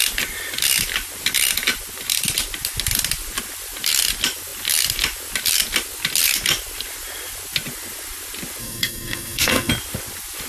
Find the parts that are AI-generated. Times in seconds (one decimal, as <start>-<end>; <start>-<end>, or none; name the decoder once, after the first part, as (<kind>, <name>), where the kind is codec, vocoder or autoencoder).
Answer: 8.6-9.7 (codec, SNAC)

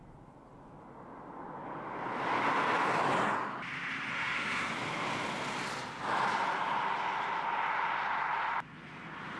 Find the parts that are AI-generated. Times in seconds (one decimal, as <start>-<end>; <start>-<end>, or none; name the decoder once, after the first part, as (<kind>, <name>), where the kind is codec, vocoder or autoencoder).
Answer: 4.1-4.7 (codec, SNAC)

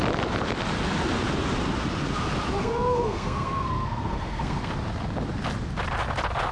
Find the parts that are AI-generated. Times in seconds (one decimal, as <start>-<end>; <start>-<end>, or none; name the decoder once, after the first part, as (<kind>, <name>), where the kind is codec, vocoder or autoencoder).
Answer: 2.6-4.7 (codec, SNAC)

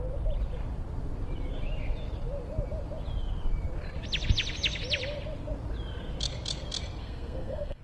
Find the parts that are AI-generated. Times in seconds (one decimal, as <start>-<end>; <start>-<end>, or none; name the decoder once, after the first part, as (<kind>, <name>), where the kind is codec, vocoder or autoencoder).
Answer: 7.0-7.8 (codec, SNAC)

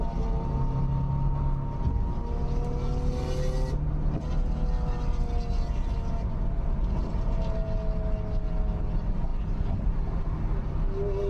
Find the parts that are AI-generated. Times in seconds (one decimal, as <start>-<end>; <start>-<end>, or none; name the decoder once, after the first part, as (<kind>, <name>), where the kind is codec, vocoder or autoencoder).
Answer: none

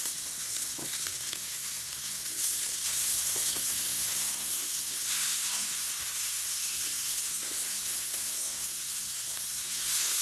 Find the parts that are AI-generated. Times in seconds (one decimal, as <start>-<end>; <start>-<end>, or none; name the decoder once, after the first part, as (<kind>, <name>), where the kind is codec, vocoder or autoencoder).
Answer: 0.0-10.2 (codec, SNAC)

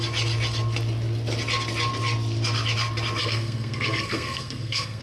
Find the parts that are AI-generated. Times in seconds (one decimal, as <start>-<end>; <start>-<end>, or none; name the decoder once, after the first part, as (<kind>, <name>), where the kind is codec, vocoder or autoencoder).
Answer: 3.2-5.0 (codec, SNAC)

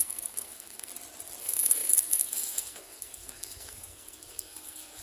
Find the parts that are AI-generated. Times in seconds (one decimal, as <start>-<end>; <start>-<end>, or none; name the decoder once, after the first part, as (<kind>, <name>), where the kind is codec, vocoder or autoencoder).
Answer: 0.0-0.9 (codec, SNAC); 1.4-5.0